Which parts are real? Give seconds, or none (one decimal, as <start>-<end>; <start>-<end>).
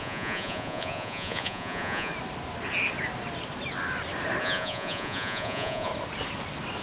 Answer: 2.1-4.4; 5.9-6.8